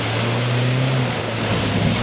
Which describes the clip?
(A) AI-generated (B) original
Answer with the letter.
B